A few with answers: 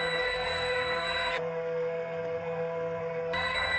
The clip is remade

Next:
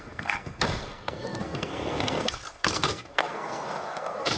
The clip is remade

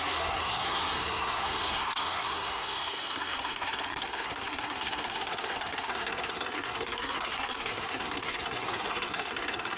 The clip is remade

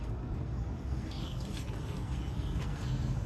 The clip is remade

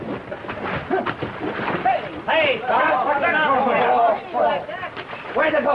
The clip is recorded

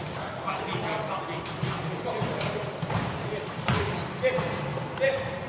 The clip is recorded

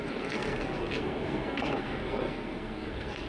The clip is remade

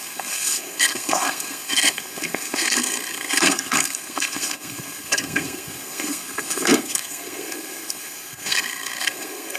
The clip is remade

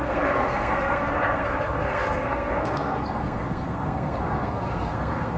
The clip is remade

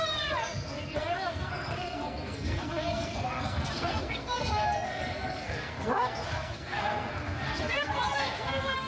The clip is remade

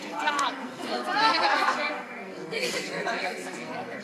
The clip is remade